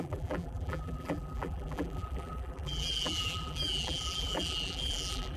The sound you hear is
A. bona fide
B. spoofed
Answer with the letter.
B